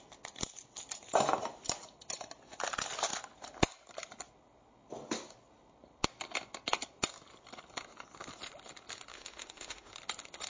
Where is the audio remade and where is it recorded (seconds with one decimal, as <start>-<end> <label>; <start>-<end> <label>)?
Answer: 0.0-9.1 recorded; 9.1-9.9 remade; 9.9-10.5 recorded